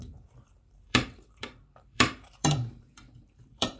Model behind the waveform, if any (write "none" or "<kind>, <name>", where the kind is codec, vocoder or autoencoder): vocoder, BigVGAN v2